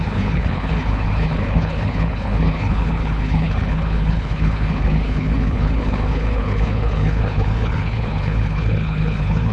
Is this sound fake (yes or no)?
yes